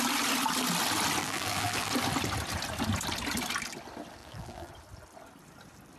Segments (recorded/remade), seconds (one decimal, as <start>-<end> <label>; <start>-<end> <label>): 0.0-1.2 recorded; 1.2-1.9 remade; 1.9-4.2 recorded; 4.2-4.7 remade; 4.7-6.0 recorded